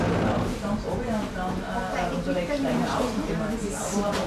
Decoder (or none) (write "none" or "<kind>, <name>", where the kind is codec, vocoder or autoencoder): none